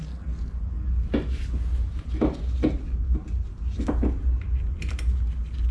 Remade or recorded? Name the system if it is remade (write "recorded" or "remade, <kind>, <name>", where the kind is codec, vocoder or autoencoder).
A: recorded